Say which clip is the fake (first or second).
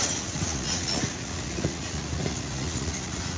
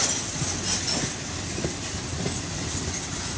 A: first